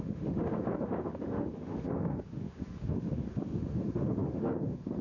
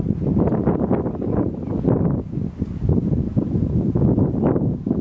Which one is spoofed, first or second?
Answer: first